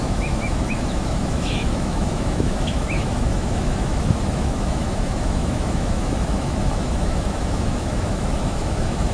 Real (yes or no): no